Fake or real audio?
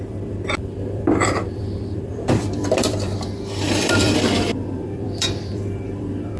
fake